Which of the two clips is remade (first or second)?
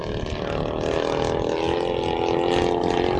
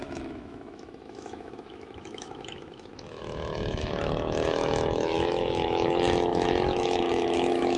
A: second